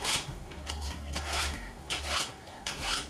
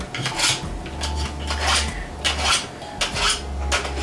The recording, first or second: second